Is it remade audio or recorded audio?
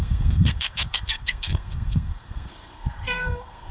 remade